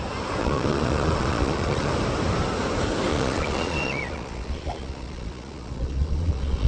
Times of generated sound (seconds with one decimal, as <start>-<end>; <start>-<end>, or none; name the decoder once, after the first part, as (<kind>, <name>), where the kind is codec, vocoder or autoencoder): 0.4-1.9 (vocoder, Vocos); 3.1-6.7